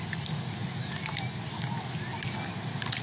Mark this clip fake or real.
real